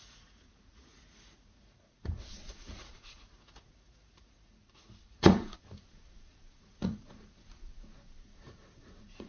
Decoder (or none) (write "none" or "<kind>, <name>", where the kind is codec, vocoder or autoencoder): vocoder, Vocos